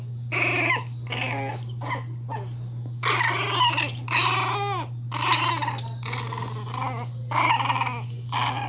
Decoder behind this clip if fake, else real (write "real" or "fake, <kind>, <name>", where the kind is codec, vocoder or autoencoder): real